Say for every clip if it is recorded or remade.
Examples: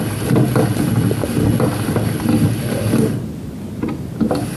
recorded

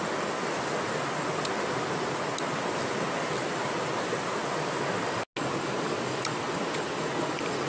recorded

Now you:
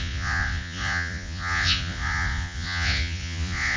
remade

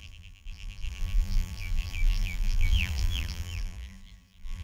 remade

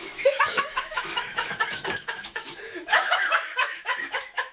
remade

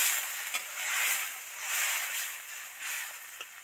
recorded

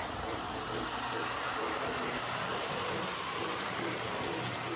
recorded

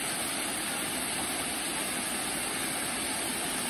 recorded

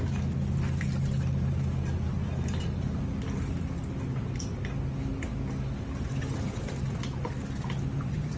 recorded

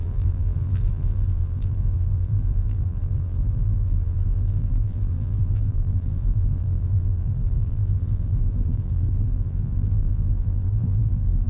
remade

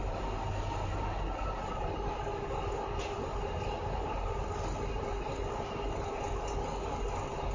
recorded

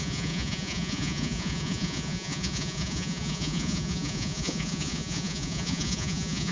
remade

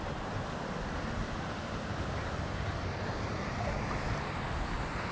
recorded